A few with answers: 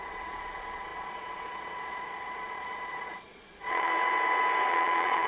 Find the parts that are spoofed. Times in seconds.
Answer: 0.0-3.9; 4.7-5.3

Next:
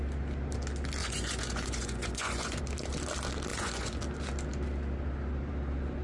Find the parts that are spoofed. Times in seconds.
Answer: 1.0-2.6; 3.5-4.0

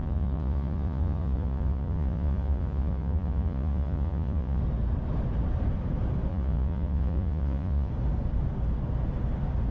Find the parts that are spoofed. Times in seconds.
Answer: 0.0-4.6; 6.3-7.9

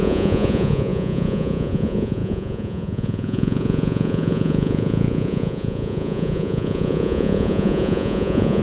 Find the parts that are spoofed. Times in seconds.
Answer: 0.0-8.6

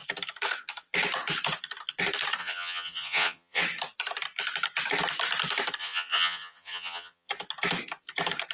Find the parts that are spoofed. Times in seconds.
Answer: 2.4-3.6; 5.8-7.3

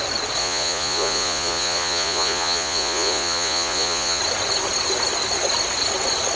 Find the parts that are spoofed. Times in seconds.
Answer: 0.4-4.2

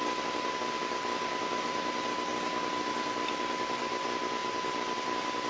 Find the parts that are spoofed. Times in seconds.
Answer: none

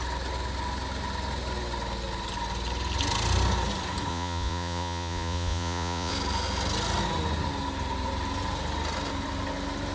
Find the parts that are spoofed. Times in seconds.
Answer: 4.1-6.1